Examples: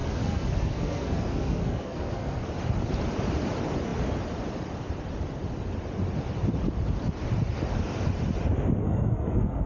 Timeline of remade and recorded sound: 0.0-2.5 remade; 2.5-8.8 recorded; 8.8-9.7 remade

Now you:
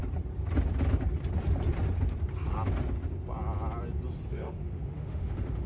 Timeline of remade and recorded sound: 0.0-4.3 recorded; 4.3-5.7 remade

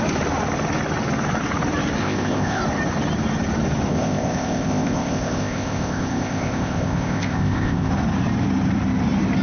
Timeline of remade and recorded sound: 0.0-2.0 recorded; 2.0-2.6 remade; 2.6-3.9 recorded; 3.9-7.9 remade; 7.9-9.4 recorded